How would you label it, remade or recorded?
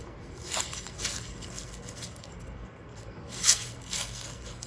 remade